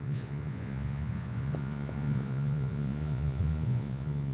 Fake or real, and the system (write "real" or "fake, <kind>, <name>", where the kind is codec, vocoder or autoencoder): fake, vocoder, Vocos